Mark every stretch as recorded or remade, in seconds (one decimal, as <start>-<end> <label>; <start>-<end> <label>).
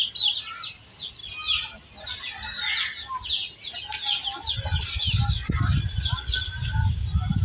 0.0-7.4 recorded